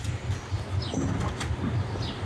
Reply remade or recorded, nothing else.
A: recorded